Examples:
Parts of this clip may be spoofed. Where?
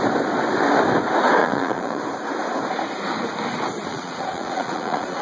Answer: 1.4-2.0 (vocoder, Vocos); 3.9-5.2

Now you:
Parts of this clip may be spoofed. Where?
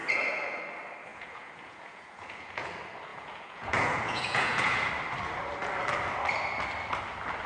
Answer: 0.0-0.6 (vocoder, Vocos); 1.1-2.7; 3.1-4.9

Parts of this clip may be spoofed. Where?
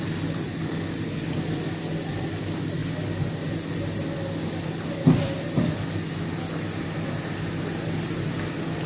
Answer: none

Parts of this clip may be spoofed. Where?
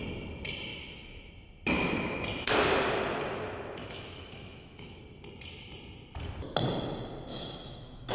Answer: 0.7-1.3 (autoencoder, DAC-VAE); 3.8-5.0; 7.3-8.1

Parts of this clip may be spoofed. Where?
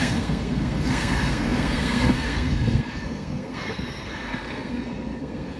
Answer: 0.0-5.6 (codec, SNAC)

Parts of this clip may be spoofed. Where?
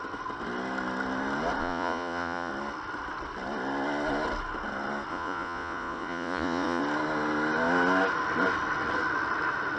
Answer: 1.6-2.5 (vocoder, Vocos); 5.1-6.8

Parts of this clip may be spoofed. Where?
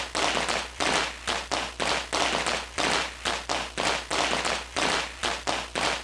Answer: 4.1-5.2 (vocoder, BigVGAN v2)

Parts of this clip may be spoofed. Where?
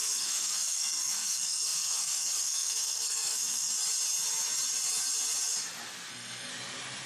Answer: 0.0-3.7 (codec, SNAC); 6.1-6.5